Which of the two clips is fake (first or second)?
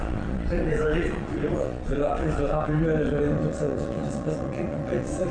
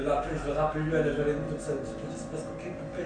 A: first